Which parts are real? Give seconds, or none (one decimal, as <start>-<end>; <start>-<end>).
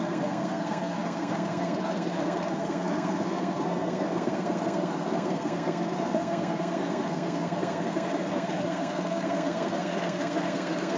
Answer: none